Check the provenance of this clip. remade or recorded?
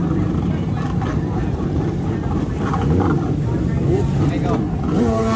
recorded